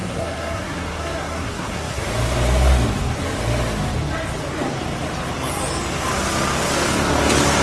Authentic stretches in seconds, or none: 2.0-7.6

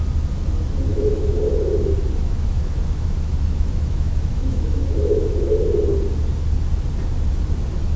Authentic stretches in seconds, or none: 0.0-0.9; 1.4-2.2; 5.6-8.0

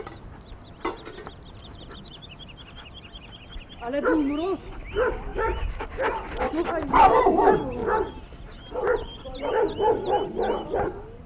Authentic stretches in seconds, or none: 0.0-11.3